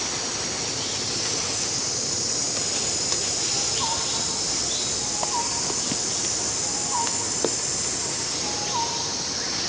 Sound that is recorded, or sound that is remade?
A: recorded